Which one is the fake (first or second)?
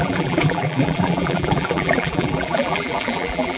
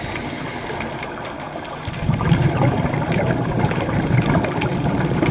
first